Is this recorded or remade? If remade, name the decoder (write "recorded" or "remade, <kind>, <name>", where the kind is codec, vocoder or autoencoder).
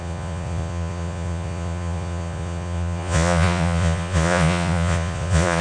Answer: remade, vocoder, Vocos